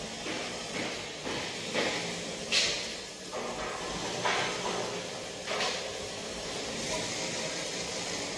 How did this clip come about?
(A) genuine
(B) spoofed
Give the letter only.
A